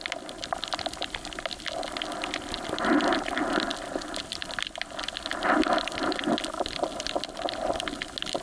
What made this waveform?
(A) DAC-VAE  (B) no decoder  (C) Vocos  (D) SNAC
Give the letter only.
B